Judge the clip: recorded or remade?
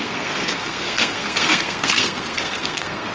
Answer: remade